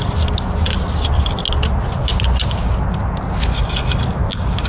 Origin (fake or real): real